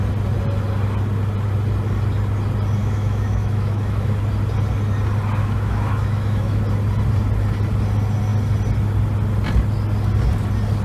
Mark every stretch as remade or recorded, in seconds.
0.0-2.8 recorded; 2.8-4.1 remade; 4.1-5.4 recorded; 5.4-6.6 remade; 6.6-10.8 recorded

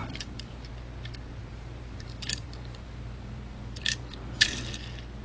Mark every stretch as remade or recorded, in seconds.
0.0-0.7 remade; 0.7-1.4 recorded; 1.4-4.5 remade; 4.5-5.2 recorded

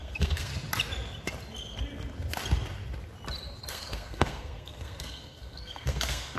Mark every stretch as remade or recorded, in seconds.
0.0-0.5 remade; 0.5-3.7 recorded; 3.7-6.4 remade

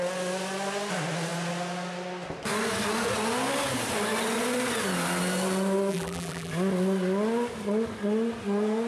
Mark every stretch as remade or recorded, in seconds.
0.0-5.9 recorded; 5.9-6.5 remade; 6.5-8.9 recorded

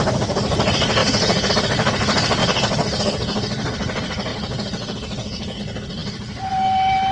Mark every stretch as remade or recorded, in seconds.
0.0-1.0 recorded; 1.0-1.5 remade; 1.5-4.3 recorded; 4.3-5.6 remade; 5.6-7.1 recorded

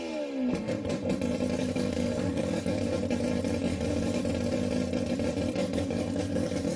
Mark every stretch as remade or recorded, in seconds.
0.0-1.6 recorded; 1.6-3.0 remade; 3.0-3.7 recorded; 3.7-4.2 remade; 4.2-5.6 recorded; 5.6-6.8 remade

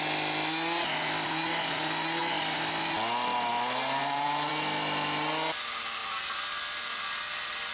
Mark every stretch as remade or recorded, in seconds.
0.0-4.0 recorded; 4.0-4.5 remade; 4.5-7.7 recorded